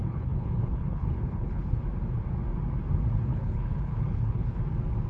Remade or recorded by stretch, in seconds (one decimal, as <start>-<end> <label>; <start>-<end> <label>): 0.0-1.8 remade; 1.8-3.3 recorded; 3.3-4.6 remade; 4.6-5.1 recorded